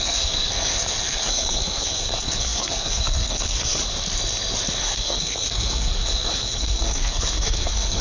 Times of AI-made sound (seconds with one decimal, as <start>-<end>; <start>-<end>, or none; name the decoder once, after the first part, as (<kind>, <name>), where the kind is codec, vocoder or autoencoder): 0.0-3.8 (codec, SNAC); 4.8-8.0